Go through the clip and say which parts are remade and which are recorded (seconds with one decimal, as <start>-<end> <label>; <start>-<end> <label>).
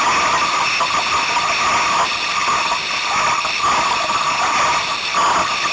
0.0-2.4 recorded; 2.4-3.0 remade; 3.0-5.7 recorded